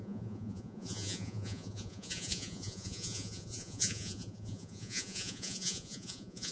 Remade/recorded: remade